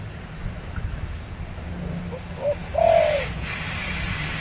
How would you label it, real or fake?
real